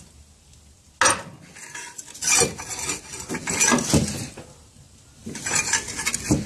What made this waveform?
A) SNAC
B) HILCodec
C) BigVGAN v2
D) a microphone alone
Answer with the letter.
D